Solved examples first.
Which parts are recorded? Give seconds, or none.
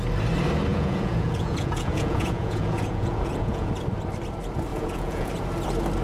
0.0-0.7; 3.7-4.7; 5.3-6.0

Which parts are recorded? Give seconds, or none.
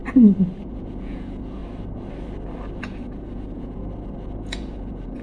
0.0-0.6; 1.6-2.8; 3.8-4.4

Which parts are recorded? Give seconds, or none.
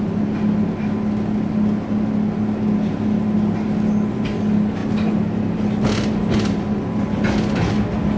0.0-8.2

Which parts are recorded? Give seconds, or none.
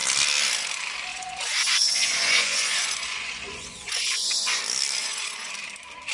0.0-1.1; 4.6-5.0; 5.5-6.1